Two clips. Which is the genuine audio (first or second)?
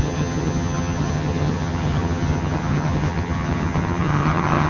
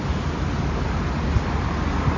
second